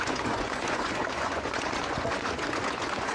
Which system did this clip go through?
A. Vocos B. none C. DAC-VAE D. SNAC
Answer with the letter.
A